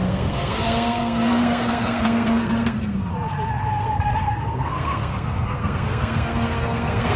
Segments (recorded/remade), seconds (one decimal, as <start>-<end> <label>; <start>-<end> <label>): 0.0-3.1 remade; 3.1-3.7 recorded; 3.7-7.2 remade